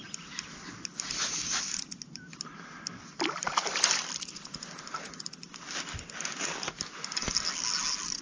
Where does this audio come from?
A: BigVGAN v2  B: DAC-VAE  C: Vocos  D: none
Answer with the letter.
D